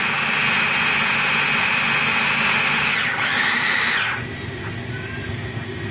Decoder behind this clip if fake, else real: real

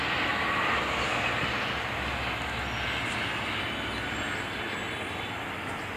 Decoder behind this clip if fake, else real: real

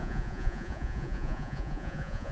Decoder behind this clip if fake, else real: fake, vocoder, Vocos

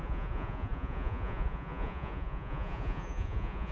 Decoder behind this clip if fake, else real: fake, vocoder, Vocos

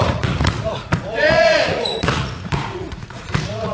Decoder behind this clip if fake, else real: fake, vocoder, Vocos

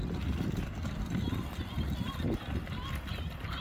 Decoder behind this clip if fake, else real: real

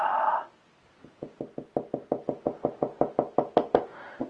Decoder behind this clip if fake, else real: real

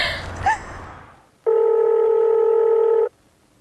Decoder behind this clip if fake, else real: real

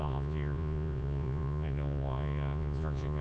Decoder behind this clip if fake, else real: fake, vocoder, Vocos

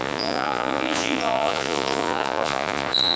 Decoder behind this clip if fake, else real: fake, vocoder, Vocos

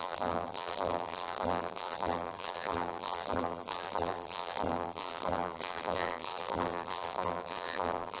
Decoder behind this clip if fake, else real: fake, vocoder, BigVGAN v2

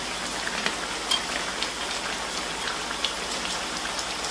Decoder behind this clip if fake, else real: real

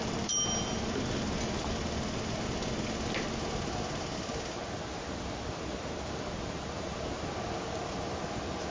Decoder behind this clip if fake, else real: real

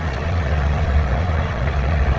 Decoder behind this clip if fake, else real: fake, vocoder, Vocos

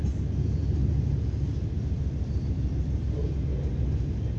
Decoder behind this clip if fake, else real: real